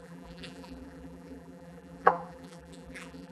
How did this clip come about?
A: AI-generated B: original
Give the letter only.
A